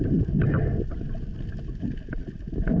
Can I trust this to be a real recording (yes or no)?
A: yes